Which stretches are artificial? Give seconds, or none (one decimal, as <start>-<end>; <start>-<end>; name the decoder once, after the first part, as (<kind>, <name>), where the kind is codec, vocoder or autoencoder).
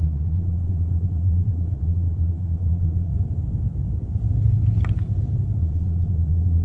0.0-3.1 (vocoder, Vocos); 5.6-6.6